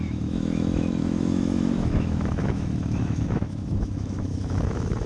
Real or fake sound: fake